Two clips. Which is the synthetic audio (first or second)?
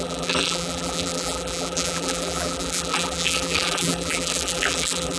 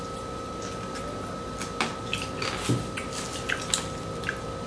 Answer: first